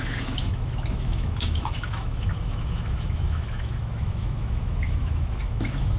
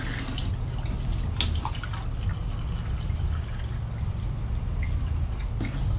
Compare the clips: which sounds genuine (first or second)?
second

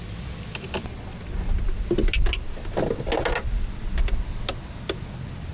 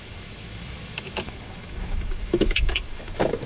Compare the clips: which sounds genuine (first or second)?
first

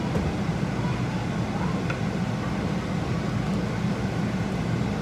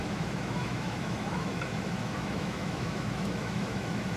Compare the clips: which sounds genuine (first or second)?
first